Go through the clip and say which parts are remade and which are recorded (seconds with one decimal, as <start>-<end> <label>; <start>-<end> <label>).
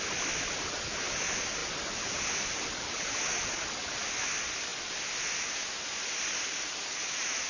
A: 0.0-1.6 recorded; 1.6-2.3 remade; 2.3-7.5 recorded